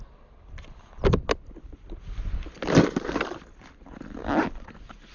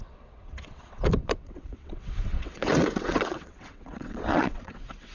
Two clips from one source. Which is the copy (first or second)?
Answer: second